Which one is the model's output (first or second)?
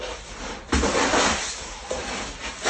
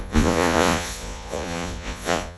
second